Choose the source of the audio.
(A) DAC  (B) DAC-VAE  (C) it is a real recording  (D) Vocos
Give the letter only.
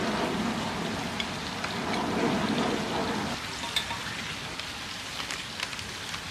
C